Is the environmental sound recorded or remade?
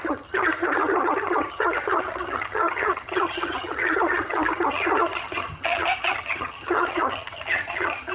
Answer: remade